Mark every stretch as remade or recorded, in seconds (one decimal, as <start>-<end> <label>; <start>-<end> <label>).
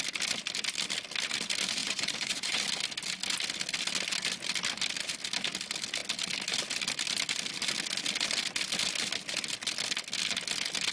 0.0-1.8 recorded; 1.8-2.6 remade; 2.6-10.9 recorded